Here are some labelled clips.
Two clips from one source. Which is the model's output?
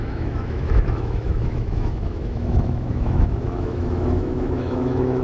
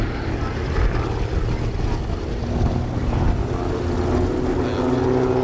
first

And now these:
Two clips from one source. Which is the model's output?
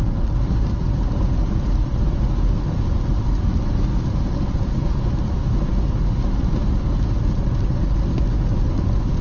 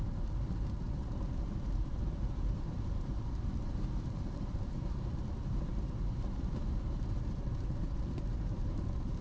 second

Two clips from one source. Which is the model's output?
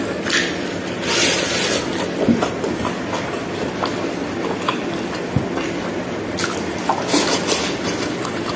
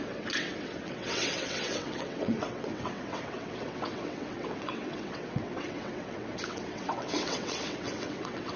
second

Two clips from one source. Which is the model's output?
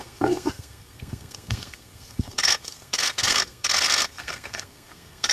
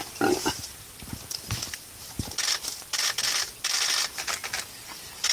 first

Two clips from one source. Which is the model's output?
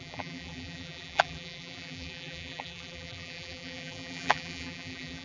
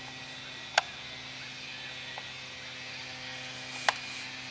first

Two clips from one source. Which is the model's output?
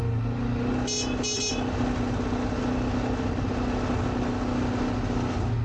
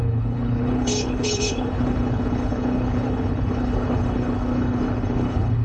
second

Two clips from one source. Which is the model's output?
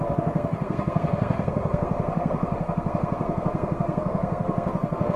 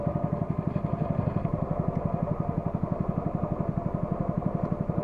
first